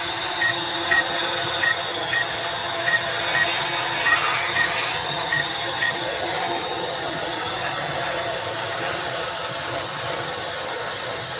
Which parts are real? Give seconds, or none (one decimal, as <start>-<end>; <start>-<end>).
none